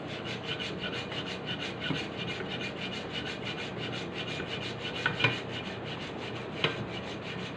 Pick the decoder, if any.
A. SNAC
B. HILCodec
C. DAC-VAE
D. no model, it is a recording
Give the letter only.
D